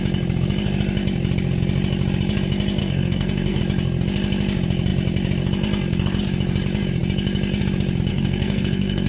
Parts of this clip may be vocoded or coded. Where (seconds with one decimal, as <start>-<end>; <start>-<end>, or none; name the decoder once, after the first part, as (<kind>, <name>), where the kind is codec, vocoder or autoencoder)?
2.8-3.6 (codec, SNAC); 8.1-9.1